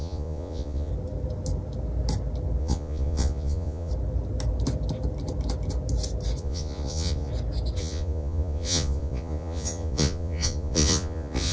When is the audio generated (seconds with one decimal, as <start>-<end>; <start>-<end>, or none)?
0.0-0.9; 2.6-3.9; 6.4-7.3; 7.8-11.5